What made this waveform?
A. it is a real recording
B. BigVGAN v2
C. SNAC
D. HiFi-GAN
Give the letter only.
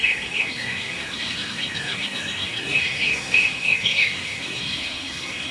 C